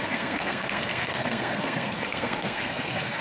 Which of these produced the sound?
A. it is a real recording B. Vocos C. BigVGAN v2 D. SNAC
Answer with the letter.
D